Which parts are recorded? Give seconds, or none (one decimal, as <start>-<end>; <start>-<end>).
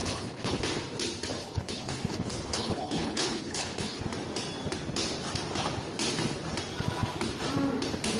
0.6-1.4; 4.0-8.2